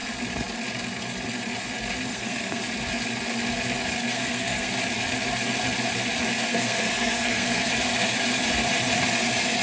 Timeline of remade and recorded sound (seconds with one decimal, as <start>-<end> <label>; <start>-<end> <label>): 0.0-2.1 recorded; 2.1-2.6 remade; 2.6-4.1 recorded; 4.1-4.7 remade; 4.7-6.5 recorded; 6.5-7.7 remade; 7.7-9.6 recorded